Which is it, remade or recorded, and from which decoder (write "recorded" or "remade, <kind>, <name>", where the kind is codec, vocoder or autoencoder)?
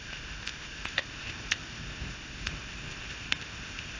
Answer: remade, codec, ZipCodec